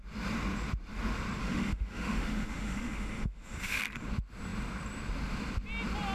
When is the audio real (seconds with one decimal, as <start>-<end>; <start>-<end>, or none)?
0.0-1.4; 3.8-6.1